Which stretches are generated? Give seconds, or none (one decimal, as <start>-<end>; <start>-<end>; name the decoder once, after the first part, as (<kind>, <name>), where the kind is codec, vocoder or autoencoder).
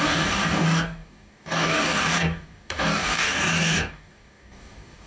0.0-5.1 (codec, DAC)